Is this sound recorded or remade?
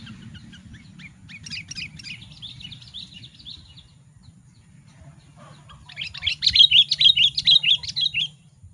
recorded